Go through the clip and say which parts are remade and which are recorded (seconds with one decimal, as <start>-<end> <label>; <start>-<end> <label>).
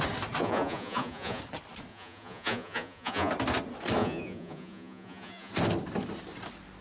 0.0-0.4 recorded; 0.4-1.4 remade; 1.4-1.9 recorded; 1.9-3.3 remade; 3.3-4.0 recorded; 4.0-5.5 remade; 5.5-6.8 recorded